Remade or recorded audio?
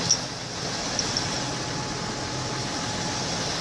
recorded